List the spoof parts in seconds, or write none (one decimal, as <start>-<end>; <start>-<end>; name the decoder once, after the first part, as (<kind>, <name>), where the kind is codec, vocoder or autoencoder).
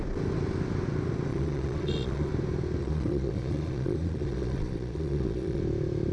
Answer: 1.3-2.3 (vocoder, Vocos); 2.8-5.6